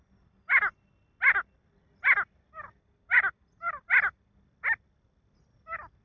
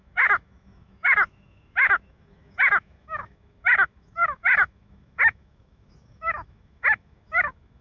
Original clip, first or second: first